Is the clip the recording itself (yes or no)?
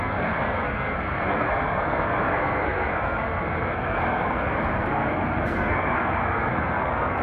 no